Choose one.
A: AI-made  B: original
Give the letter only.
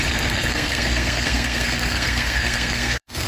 A